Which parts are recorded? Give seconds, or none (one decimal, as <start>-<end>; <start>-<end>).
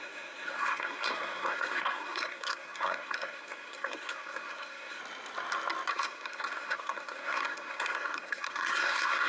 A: 5.0-5.9